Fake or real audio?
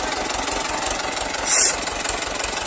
real